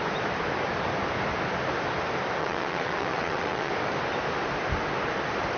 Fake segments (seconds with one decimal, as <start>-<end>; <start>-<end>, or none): 2.4-3.7